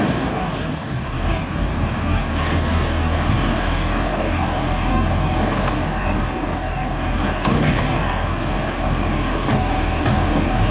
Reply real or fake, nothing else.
fake